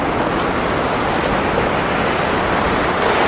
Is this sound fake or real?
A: real